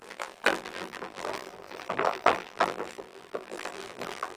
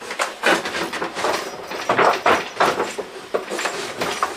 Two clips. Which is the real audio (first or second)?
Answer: second